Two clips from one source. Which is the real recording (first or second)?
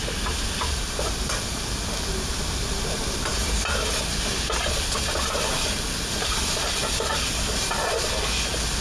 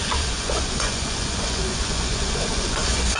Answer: first